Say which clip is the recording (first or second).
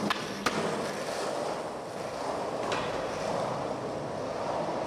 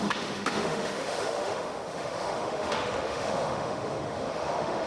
first